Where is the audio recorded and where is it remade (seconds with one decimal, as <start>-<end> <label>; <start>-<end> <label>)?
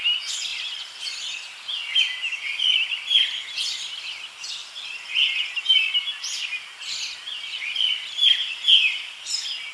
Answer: 0.0-9.7 recorded